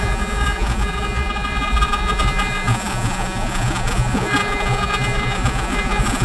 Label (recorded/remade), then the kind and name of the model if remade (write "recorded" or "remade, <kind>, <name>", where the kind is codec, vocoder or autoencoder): remade, vocoder, Vocos